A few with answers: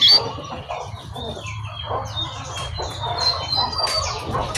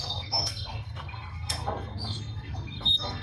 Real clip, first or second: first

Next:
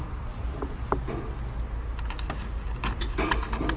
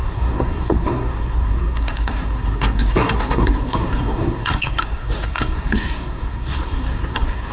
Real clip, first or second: first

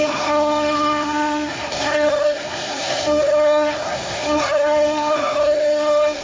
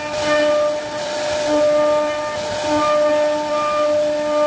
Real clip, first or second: second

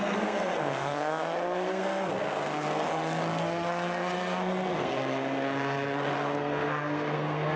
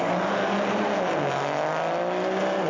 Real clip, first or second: second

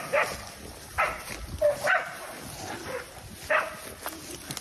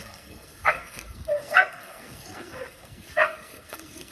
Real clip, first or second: first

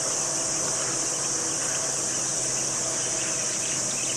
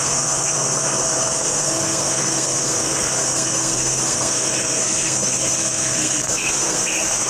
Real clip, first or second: first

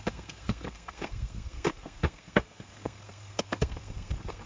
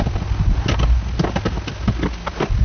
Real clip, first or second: second